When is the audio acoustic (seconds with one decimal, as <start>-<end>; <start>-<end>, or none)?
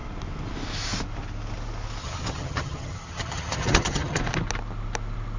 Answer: 0.0-2.0; 4.2-5.4